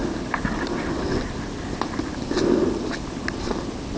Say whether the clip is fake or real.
real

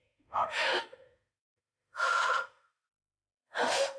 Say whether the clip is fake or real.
fake